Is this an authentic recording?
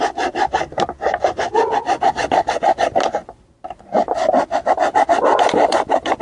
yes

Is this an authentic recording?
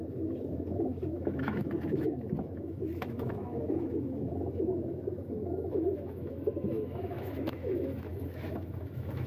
no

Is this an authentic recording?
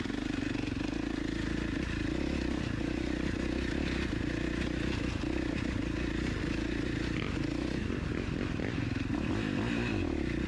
yes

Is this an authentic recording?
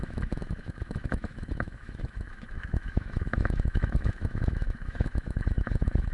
no